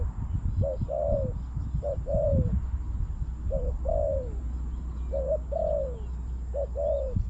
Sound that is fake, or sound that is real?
real